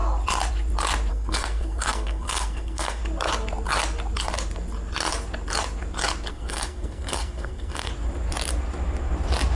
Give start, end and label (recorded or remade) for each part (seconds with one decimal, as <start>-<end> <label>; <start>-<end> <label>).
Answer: 0.0-1.1 recorded; 1.1-3.0 remade; 3.0-6.3 recorded; 6.3-7.9 remade; 7.9-9.6 recorded